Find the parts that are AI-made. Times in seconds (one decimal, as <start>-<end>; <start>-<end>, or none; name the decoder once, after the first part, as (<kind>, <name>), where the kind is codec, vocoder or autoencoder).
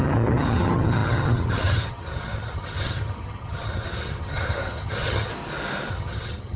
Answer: 0.0-5.3 (vocoder, HiFi-GAN); 5.9-6.6